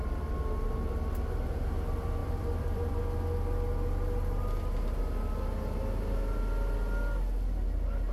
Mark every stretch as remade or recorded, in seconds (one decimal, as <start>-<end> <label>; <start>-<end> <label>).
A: 0.0-2.2 recorded; 2.2-3.0 remade; 3.0-8.1 recorded